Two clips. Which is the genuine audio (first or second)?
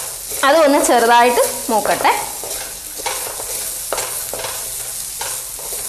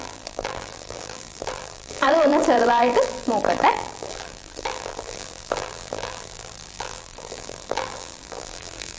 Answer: first